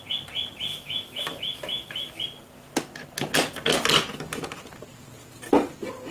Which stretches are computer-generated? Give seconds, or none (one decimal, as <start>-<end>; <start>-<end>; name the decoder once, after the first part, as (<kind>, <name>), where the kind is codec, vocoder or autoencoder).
0.7-2.1 (autoencoder, DAC-VAE)